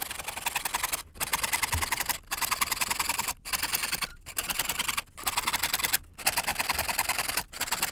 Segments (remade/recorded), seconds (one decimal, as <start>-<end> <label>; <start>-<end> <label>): 0.0-7.9 recorded